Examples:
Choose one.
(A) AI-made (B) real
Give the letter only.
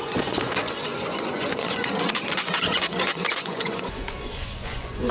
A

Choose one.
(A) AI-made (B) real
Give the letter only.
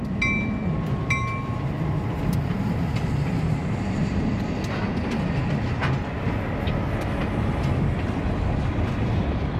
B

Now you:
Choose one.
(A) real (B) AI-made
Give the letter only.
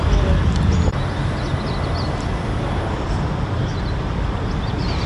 A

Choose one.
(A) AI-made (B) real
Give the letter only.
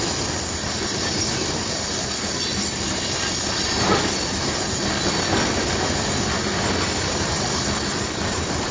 B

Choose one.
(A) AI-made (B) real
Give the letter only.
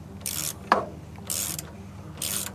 A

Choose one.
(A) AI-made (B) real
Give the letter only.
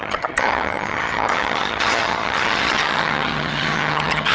A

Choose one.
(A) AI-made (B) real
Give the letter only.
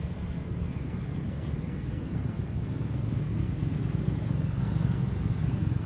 A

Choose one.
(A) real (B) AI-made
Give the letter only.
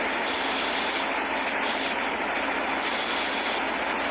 A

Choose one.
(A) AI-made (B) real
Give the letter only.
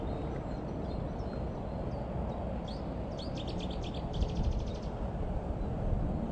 B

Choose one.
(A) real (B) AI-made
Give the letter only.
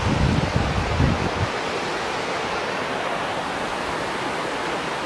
A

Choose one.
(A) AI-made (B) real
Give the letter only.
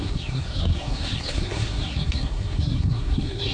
A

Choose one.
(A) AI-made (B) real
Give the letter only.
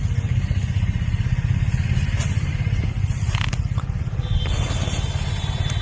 B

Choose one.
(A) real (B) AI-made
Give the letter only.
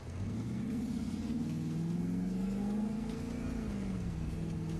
B